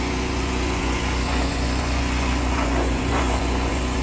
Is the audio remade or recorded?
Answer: remade